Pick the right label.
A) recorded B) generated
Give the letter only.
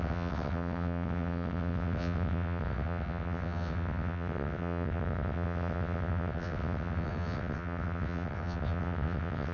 B